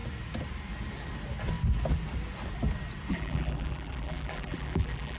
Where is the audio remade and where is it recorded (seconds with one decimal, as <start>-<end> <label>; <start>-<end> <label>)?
0.0-3.1 recorded; 3.1-5.2 remade